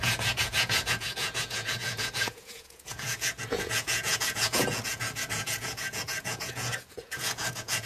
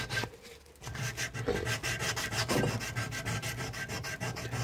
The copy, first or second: first